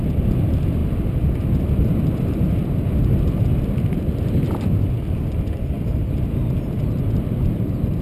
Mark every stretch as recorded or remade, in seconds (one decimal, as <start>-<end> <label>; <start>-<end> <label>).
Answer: 0.0-8.0 recorded

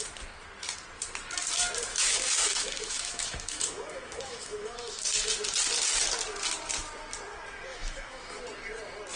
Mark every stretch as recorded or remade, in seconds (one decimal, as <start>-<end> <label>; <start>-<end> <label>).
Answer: 0.0-1.9 recorded; 1.9-5.1 remade; 5.1-7.7 recorded; 7.7-8.4 remade; 8.4-9.2 recorded

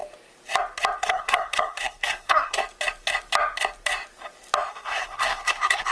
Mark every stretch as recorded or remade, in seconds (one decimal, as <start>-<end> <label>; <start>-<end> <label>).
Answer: 0.0-1.0 recorded; 1.0-2.6 remade; 2.6-4.7 recorded; 4.7-5.9 remade

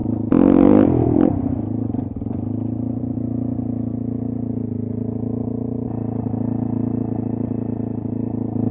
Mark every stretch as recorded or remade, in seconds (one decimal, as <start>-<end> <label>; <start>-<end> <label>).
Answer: 0.0-8.7 recorded